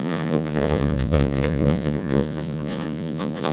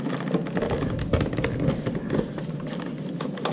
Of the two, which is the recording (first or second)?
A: second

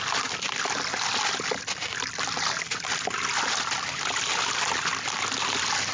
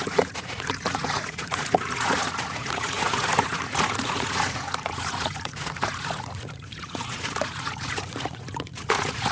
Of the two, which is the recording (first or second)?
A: first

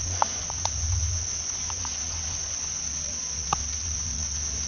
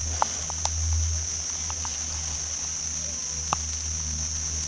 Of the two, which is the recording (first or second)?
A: second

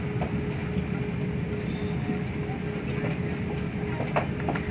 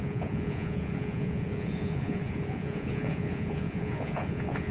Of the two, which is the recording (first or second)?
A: first